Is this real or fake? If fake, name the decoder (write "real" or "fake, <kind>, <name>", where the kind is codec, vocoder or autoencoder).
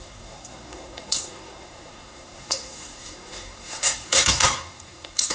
fake, codec, SNAC